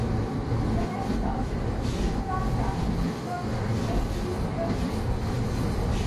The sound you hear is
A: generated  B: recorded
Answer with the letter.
B